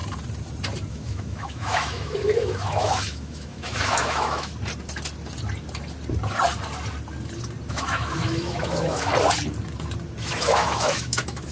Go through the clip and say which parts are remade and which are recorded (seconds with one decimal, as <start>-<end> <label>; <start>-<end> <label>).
0.0-0.9 recorded; 0.9-4.5 remade; 4.5-7.7 recorded; 7.7-9.1 remade; 9.1-10.2 recorded; 10.2-11.5 remade